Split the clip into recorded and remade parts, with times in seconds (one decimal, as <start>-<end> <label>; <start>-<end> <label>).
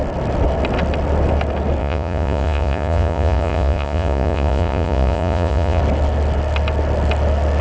0.0-1.8 recorded; 1.8-5.8 remade; 5.8-7.6 recorded